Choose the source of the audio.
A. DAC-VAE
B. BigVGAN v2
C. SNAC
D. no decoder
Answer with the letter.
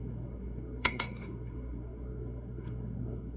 C